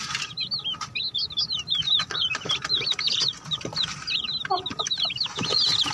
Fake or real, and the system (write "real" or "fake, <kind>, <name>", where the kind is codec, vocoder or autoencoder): real